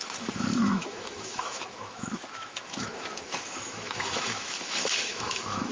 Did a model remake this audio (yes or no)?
yes